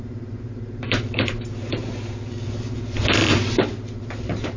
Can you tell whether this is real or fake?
fake